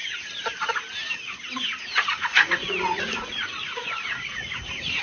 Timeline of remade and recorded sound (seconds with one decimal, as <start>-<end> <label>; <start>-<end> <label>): 0.0-1.8 recorded; 1.8-5.0 remade